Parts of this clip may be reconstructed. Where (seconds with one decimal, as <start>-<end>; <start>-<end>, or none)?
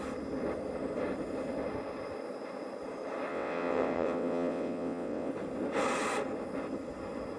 3.3-5.3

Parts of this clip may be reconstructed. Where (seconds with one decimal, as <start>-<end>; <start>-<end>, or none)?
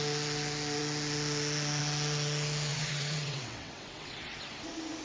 2.7-4.4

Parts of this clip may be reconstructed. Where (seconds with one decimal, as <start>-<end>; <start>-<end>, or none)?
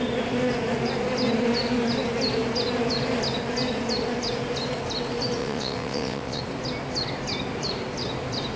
5.4-6.4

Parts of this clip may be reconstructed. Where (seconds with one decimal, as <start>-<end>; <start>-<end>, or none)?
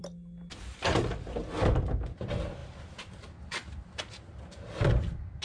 none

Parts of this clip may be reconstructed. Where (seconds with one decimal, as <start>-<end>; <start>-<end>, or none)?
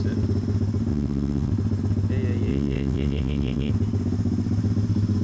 0.9-1.5; 2.5-3.7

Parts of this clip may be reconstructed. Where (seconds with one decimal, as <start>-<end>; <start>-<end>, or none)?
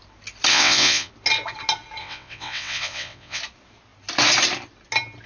0.5-1.1; 2.0-3.4